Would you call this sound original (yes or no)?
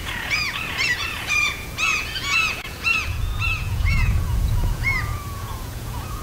no